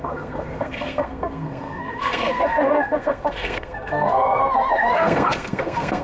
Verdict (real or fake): fake